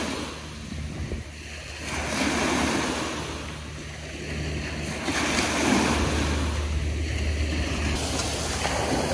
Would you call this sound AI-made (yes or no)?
no